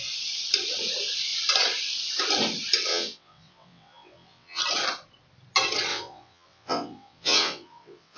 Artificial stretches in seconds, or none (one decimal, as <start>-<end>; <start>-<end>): 2.9-4.6; 5.9-8.2